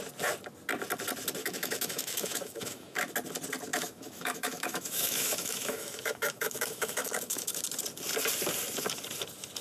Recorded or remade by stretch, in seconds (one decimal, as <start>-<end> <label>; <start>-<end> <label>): 0.0-1.4 recorded; 1.4-3.1 remade; 3.1-3.7 recorded; 3.7-7.6 remade; 7.6-9.6 recorded